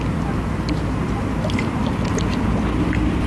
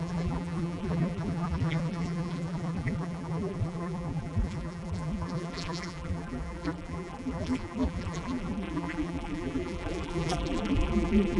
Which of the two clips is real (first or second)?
first